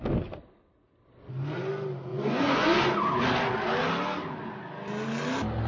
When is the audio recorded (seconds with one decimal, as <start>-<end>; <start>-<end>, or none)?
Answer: 0.0-2.1; 2.8-5.7

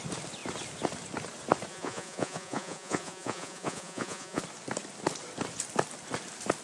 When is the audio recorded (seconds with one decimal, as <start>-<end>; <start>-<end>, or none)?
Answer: 0.0-1.7; 4.4-6.6

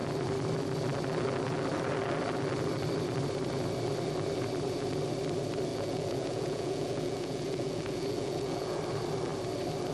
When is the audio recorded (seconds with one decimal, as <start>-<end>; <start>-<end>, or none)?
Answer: 0.0-5.7; 8.8-9.9

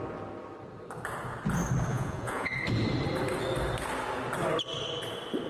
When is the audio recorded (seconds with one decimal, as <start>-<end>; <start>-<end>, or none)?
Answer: 0.0-1.9; 2.5-5.5

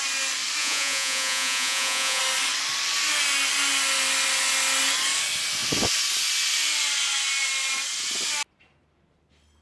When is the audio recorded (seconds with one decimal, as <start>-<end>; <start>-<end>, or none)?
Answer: 0.0-0.6; 2.2-9.6